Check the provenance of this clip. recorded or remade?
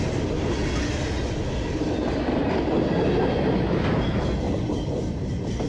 recorded